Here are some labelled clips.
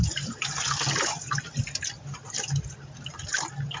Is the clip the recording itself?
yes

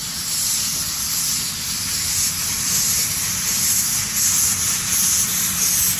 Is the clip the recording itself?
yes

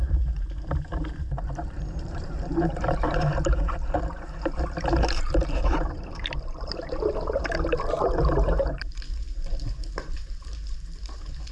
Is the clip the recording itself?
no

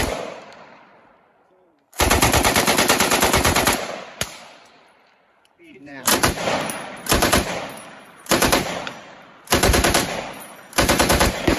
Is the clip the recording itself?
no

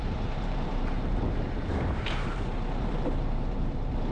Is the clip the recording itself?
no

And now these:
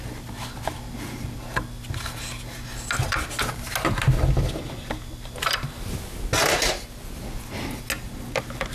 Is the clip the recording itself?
yes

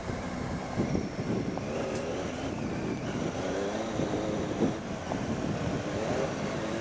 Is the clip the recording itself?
yes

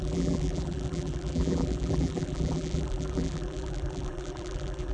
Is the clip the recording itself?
no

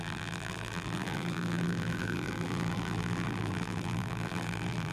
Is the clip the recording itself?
no